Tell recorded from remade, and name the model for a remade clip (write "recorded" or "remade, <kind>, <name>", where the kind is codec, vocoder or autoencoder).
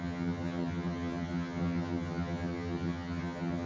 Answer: remade, vocoder, HiFi-GAN